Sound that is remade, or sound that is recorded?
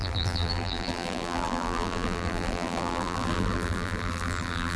remade